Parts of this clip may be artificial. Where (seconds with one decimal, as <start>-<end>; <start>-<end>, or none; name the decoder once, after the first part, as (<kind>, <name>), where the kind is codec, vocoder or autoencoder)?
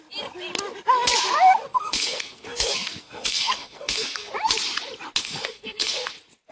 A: 1.7-4.3 (codec, SNAC); 5.2-6.1